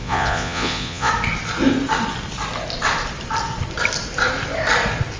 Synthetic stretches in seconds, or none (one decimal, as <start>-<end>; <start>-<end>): 0.0-1.1